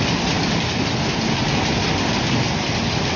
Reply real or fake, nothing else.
real